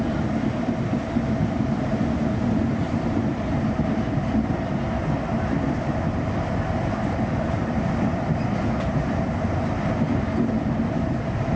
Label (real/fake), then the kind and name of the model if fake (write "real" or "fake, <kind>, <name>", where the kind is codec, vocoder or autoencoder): fake, vocoder, BigVGAN v2